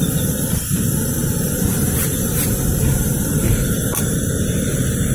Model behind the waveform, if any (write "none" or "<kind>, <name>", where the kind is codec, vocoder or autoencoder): vocoder, BigVGAN v2